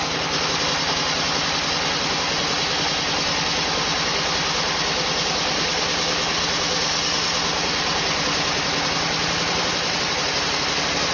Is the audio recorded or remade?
recorded